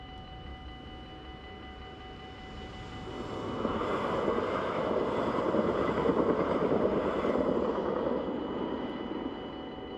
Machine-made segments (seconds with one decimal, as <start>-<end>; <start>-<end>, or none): none